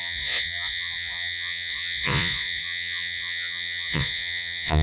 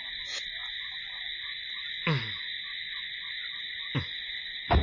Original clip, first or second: second